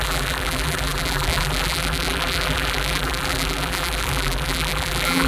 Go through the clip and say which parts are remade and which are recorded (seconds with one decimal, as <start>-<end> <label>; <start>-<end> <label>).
0.0-5.3 remade

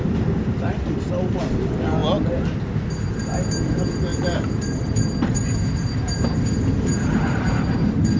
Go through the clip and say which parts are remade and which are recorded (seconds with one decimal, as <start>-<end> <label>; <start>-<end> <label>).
0.0-2.0 remade; 2.0-3.6 recorded; 3.6-8.2 remade

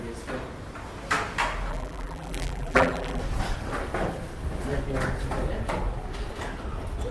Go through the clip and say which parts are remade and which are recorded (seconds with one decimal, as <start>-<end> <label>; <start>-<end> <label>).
0.0-1.7 recorded; 1.7-3.2 remade; 3.2-7.1 recorded

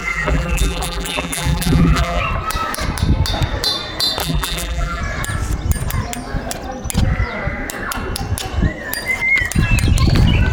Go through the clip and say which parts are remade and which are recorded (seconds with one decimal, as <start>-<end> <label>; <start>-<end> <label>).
0.0-2.2 remade; 2.2-4.2 recorded; 4.2-5.0 remade; 5.0-10.5 recorded

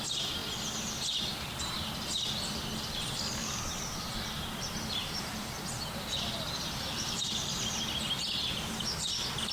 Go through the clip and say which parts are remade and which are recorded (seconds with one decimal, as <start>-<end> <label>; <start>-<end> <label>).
0.0-3.4 recorded; 3.4-4.1 remade; 4.1-5.0 recorded; 5.0-7.5 remade; 7.5-9.5 recorded

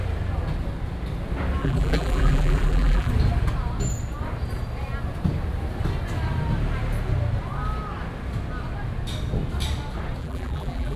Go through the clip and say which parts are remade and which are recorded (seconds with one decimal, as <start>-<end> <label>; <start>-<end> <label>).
0.0-1.6 recorded; 1.6-3.1 remade; 3.1-10.2 recorded; 10.2-11.0 remade

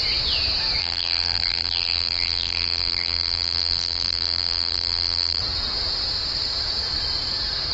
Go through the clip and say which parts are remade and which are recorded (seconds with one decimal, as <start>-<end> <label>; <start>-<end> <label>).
0.0-0.8 recorded; 0.8-5.4 remade; 5.4-7.7 recorded

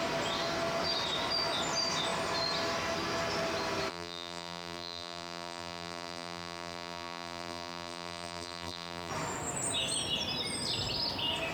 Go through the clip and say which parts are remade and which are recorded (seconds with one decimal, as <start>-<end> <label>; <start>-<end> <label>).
0.0-3.9 recorded; 3.9-9.1 remade; 9.1-11.5 recorded